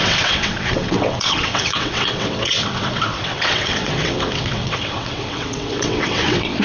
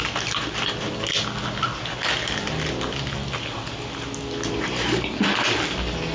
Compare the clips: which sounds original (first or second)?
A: second